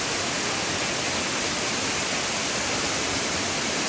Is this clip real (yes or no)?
yes